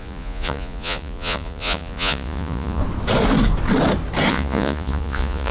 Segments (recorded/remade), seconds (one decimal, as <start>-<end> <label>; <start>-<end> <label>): 0.0-2.8 remade; 2.8-4.3 recorded; 4.3-5.5 remade